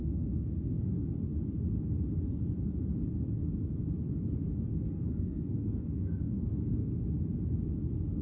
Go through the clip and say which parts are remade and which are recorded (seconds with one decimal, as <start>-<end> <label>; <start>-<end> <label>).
0.0-0.8 remade; 0.8-4.7 recorded; 4.7-7.0 remade; 7.0-8.2 recorded